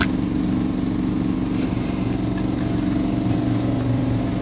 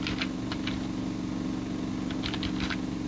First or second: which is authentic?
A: second